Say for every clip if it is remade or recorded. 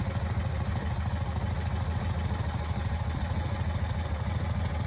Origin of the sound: recorded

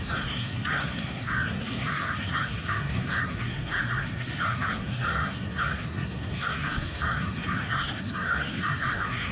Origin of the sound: remade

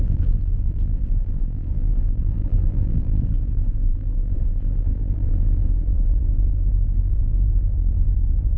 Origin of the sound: remade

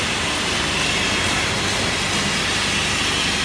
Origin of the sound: recorded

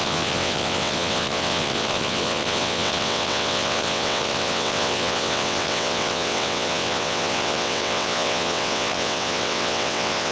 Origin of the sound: remade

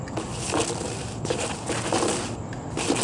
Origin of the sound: recorded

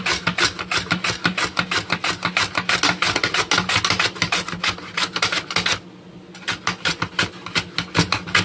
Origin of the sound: recorded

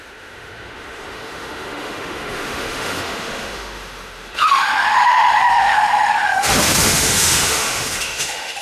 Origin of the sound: remade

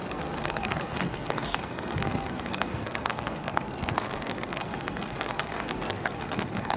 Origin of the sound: remade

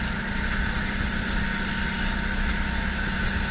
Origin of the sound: recorded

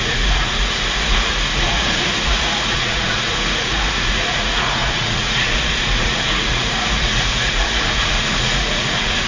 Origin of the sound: remade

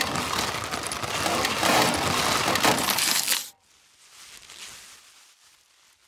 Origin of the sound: recorded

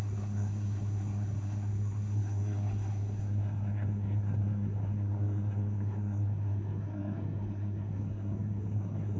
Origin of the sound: remade